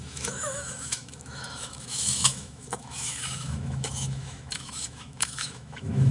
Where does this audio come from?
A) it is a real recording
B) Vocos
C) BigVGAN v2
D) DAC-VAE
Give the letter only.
D